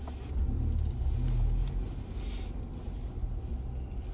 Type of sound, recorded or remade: recorded